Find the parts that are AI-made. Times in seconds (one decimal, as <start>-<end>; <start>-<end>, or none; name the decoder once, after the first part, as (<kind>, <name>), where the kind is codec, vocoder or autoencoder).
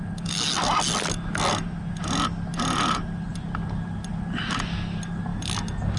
none